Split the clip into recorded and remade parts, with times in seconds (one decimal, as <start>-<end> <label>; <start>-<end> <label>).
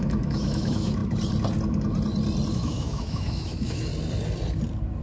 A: 0.0-1.0 remade; 1.0-2.5 recorded; 2.5-3.9 remade; 3.9-5.0 recorded